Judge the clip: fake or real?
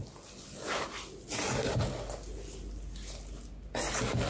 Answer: real